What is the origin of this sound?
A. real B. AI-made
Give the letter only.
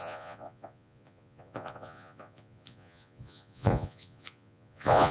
B